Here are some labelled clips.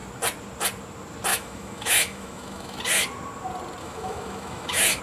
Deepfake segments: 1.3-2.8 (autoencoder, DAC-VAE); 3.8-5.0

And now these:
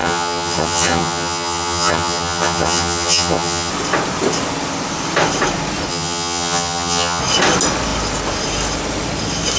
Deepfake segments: 0.0-3.7 (vocoder, HiFi-GAN); 5.9-7.2